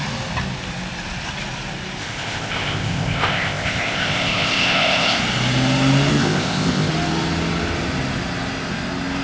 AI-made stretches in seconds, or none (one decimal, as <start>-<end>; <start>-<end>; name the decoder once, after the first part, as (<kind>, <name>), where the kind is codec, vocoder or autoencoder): 2.0-5.2 (codec, ZipCodec); 6.1-6.9